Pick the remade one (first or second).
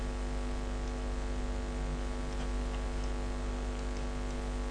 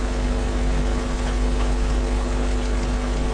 second